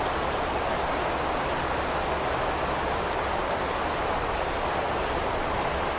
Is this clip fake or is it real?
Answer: real